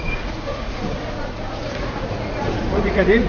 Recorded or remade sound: remade